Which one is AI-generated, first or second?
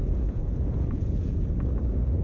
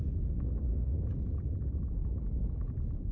first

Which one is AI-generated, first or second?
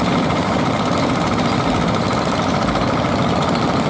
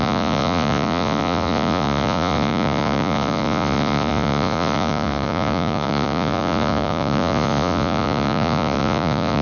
second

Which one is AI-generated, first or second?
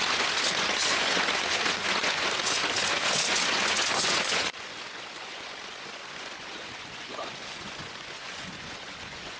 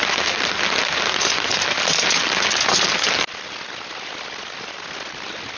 first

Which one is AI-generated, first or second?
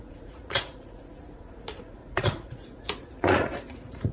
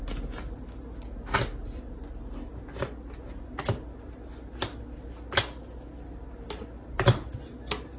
first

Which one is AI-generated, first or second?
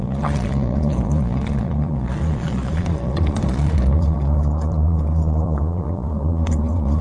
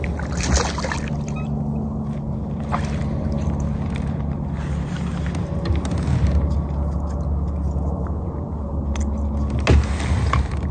first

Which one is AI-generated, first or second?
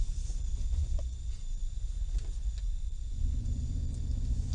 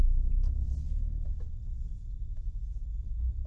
first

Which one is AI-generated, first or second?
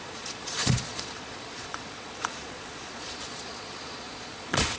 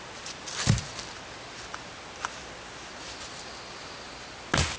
first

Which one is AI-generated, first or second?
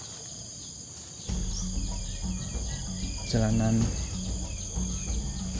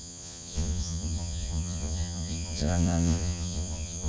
second